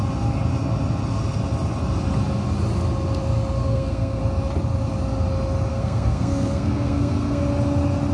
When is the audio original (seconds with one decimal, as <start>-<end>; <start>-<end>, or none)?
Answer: 0.0-3.6; 4.2-5.7; 7.4-8.1